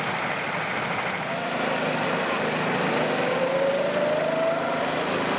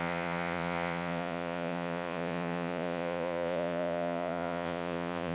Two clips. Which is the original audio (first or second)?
first